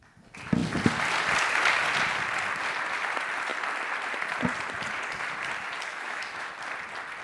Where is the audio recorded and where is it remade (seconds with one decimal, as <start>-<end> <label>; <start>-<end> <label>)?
0.0-5.9 recorded; 5.9-6.5 remade; 6.5-7.2 recorded